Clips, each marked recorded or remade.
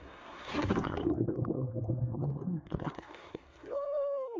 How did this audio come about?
remade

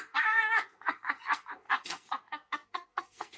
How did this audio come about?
remade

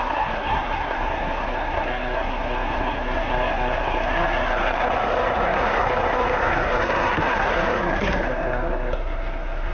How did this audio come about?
remade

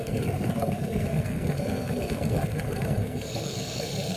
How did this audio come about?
remade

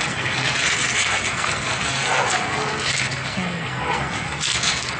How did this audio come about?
remade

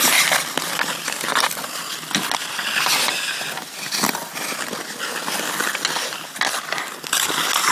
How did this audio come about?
recorded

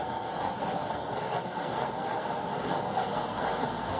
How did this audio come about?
remade